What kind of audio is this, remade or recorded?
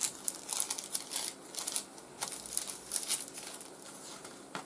recorded